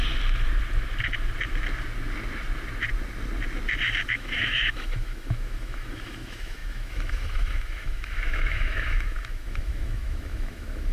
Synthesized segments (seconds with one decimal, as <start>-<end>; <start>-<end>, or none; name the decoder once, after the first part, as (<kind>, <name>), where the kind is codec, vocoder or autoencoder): 4.1-10.9 (autoencoder, DAC-VAE)